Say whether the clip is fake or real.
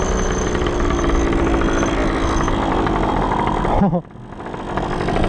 real